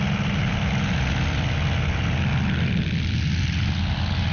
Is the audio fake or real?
real